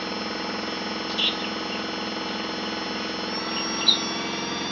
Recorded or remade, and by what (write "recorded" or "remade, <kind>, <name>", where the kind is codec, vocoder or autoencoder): recorded